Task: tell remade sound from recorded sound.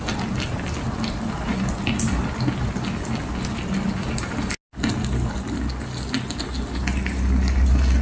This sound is recorded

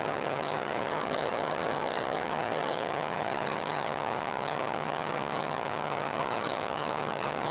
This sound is remade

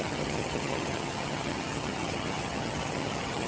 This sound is remade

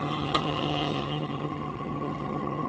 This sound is remade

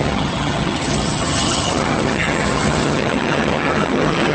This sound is remade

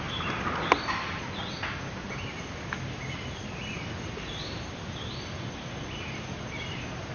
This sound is recorded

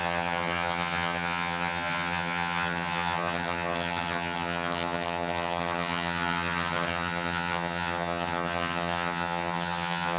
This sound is remade